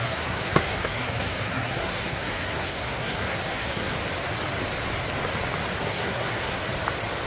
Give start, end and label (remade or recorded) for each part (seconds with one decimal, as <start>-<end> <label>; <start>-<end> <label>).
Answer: 0.0-4.0 remade; 4.0-5.8 recorded; 5.8-6.6 remade; 6.6-7.3 recorded